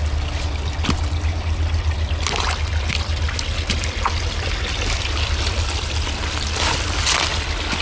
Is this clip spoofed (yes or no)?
no